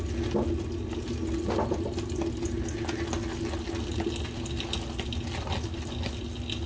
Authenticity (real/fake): real